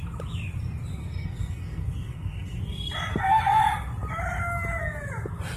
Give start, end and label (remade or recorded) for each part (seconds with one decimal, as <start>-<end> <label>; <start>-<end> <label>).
0.0-1.0 recorded; 1.0-2.6 remade; 2.6-3.1 recorded; 3.1-3.6 remade; 3.6-5.6 recorded